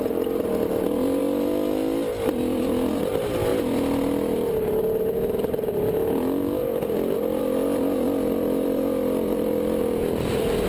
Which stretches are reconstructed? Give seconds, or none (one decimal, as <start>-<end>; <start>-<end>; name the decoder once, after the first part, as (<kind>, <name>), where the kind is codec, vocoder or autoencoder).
0.0-1.2 (vocoder, BigVGAN v2); 3.0-3.5; 7.4-10.7